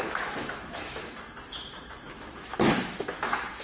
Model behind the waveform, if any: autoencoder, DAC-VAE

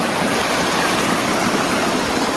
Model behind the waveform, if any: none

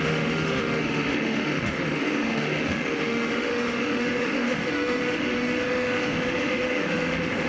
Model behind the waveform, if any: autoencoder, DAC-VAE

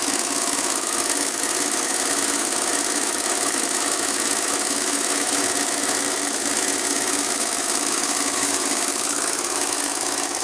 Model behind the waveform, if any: autoencoder, DAC-VAE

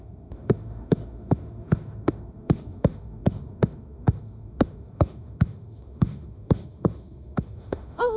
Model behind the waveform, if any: autoencoder, DAC-VAE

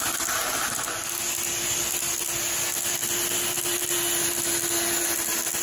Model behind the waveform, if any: none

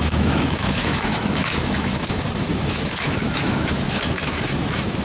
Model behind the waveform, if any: autoencoder, DAC-VAE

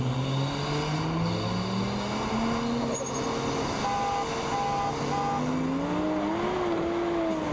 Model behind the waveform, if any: none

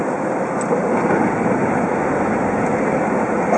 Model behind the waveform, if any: none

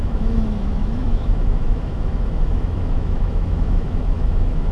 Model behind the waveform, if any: autoencoder, DAC-VAE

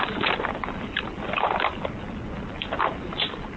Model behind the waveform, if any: none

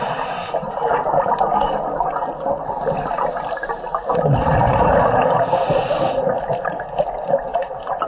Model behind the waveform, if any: none